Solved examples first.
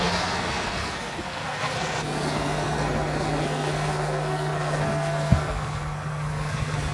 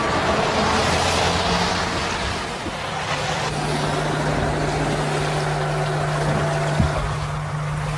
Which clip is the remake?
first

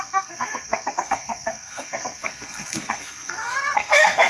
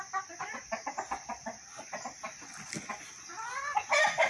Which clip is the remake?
first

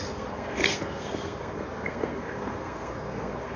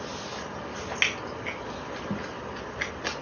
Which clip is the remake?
first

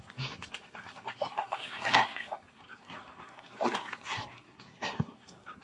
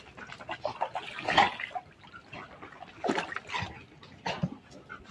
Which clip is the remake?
first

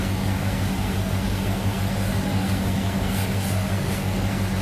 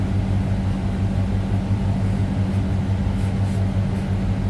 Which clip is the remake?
first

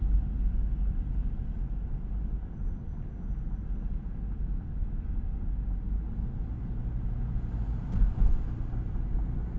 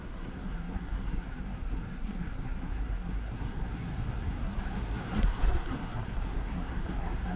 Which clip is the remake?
second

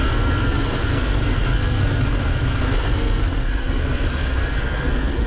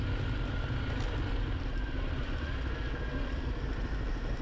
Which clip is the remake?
first